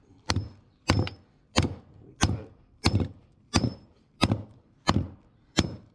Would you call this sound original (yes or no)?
no